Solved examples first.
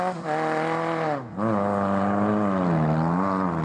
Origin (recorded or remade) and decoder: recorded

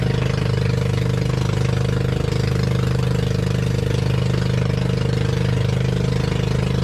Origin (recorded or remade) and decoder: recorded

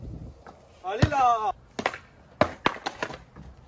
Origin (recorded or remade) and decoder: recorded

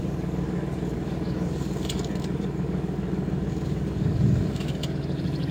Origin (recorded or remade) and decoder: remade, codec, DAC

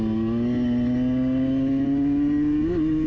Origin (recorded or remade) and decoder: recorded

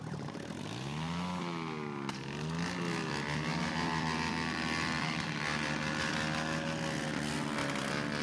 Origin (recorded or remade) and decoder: recorded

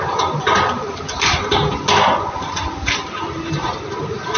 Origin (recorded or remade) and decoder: recorded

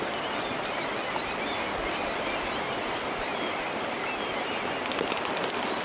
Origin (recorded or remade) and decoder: recorded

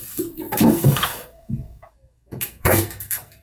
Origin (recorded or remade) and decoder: remade, codec, SNAC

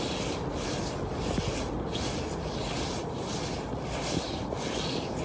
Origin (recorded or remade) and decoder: recorded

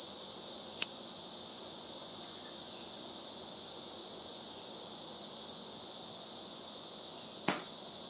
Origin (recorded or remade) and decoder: remade, vocoder, Vocos